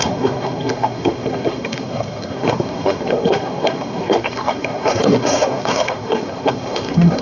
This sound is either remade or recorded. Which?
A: remade